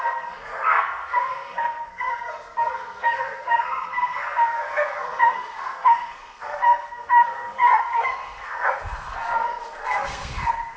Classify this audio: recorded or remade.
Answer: remade